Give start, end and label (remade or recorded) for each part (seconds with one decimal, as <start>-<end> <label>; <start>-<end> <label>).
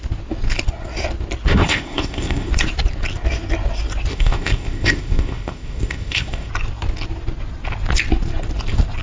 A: 0.0-1.5 recorded; 1.5-2.5 remade; 2.5-4.1 recorded; 4.1-6.5 remade; 6.5-9.0 recorded